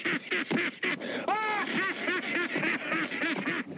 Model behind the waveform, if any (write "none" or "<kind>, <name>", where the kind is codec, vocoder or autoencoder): none